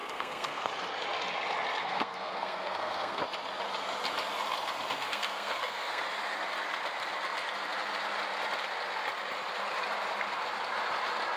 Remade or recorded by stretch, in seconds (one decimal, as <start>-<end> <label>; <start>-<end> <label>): 0.0-0.7 remade; 0.7-1.8 recorded; 1.8-3.2 remade; 3.2-5.0 recorded; 5.0-6.0 remade; 6.0-11.4 recorded